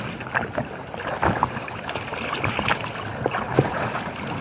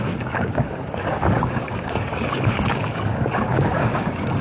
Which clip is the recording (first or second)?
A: first